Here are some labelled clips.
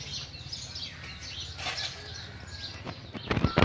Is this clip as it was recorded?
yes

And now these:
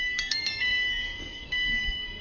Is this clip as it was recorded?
no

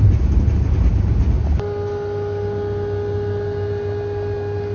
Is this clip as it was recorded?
yes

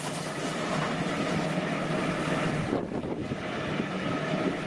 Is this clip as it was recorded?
yes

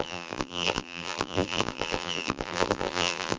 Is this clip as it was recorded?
no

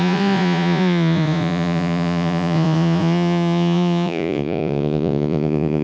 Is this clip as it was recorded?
no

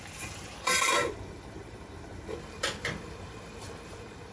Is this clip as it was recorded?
no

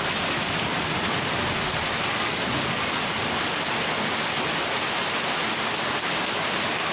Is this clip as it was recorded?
yes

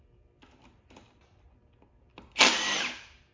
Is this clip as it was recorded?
yes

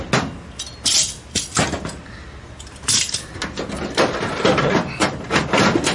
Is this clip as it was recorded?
yes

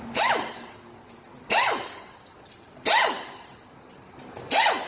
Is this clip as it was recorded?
yes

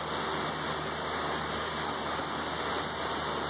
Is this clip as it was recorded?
yes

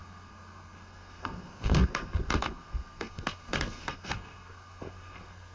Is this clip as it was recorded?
no